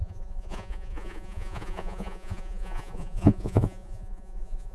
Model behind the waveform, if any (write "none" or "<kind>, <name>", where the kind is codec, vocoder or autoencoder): vocoder, Vocos